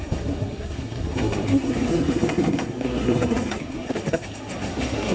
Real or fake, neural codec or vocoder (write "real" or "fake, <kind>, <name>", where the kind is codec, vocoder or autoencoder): fake, codec, SNAC